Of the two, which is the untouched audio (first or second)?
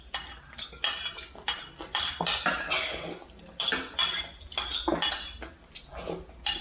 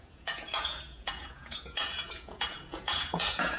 first